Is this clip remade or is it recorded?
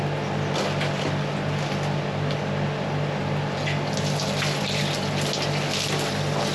recorded